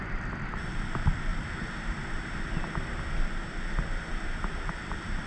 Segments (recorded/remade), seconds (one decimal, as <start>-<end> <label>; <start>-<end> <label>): 0.0-1.3 remade; 1.3-4.5 recorded; 4.5-5.3 remade